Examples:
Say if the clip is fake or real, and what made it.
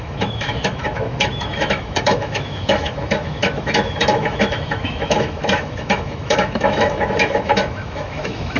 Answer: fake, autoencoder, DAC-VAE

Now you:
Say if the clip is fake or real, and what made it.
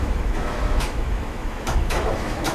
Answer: fake, autoencoder, DAC-VAE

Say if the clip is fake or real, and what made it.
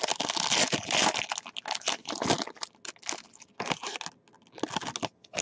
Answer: real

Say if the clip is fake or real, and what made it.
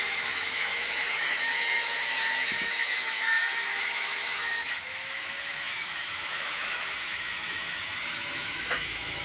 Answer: fake, autoencoder, DAC-VAE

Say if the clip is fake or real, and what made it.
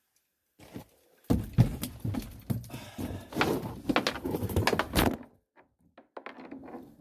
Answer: real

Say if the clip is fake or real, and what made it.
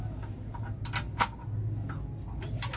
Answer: real